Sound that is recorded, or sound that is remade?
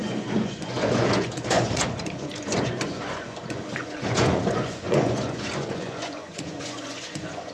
remade